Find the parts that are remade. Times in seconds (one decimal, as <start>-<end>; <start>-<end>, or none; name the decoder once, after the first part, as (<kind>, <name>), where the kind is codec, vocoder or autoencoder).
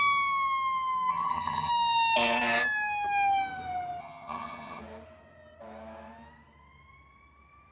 1.1-1.7 (vocoder, HiFi-GAN); 4.0-4.8